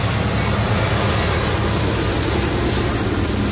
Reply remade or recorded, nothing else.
recorded